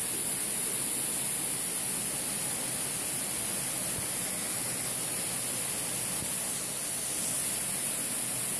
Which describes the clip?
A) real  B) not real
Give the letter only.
A